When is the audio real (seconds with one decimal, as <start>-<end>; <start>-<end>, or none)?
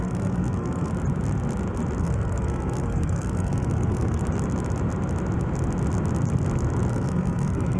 0.9-2.0; 4.2-6.9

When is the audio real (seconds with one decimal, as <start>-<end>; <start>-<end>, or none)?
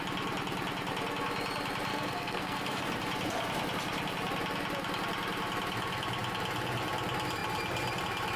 0.0-1.9; 2.8-8.4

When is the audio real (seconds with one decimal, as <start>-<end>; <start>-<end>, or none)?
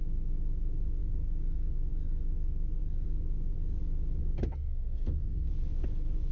0.0-4.2; 5.5-6.3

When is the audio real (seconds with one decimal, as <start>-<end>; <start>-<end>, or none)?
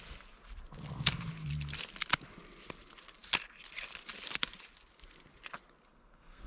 0.0-5.9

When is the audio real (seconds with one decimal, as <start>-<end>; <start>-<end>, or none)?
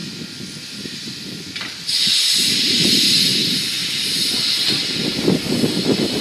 0.0-6.2